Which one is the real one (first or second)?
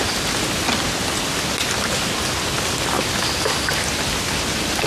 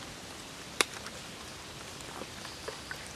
first